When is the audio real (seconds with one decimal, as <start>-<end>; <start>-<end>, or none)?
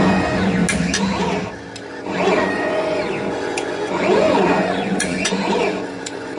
0.6-2.0